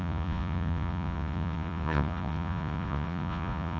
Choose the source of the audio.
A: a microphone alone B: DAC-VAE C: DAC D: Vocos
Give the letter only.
D